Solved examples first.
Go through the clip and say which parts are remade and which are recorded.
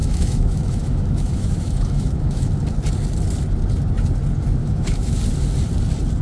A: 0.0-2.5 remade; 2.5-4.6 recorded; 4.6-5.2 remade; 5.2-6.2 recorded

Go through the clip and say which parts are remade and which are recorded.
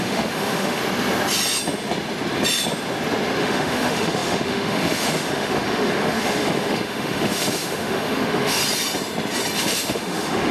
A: 0.0-0.8 remade; 0.8-3.4 recorded; 3.4-8.6 remade; 8.6-9.6 recorded; 9.6-10.5 remade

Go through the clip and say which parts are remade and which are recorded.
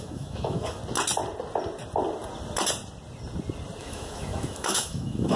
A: 0.0-0.8 remade; 0.8-3.8 recorded; 3.8-5.4 remade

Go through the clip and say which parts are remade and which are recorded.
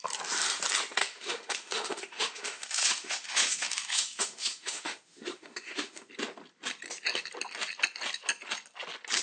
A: 0.0-1.0 recorded; 1.0-6.1 remade; 6.1-9.2 recorded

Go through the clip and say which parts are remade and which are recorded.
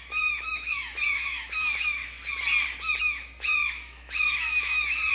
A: 0.0-2.0 remade; 2.0-3.0 recorded; 3.0-5.1 remade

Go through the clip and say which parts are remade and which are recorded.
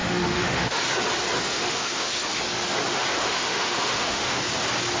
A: 0.0-0.8 remade; 0.8-1.5 recorded; 1.5-2.4 remade; 2.4-2.9 recorded; 2.9-4.4 remade; 4.4-5.0 recorded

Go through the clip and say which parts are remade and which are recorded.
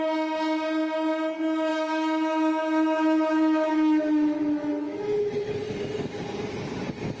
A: 0.0-1.7 recorded; 1.7-5.3 remade; 5.3-7.2 recorded